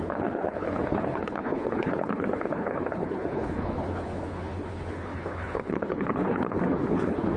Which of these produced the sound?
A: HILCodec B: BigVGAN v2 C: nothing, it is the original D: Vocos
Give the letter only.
A